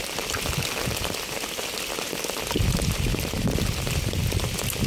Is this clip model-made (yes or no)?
no